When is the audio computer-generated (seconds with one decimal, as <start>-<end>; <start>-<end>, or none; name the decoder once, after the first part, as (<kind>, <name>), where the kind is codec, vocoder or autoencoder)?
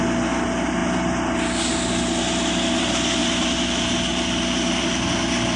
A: none